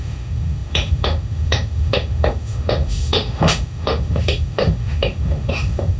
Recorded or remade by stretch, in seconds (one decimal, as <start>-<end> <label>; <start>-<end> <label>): 0.0-6.0 remade